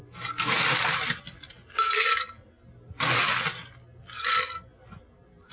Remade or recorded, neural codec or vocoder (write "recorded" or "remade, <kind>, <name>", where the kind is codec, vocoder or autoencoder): recorded